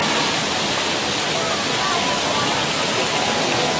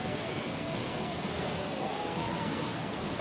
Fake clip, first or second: second